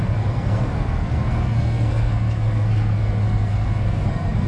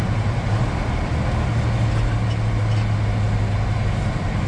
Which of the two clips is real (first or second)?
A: second